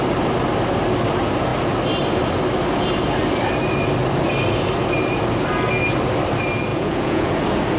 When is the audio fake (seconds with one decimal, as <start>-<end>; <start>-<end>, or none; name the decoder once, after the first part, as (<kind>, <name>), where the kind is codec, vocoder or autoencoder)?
6.7-7.3 (vocoder, Vocos)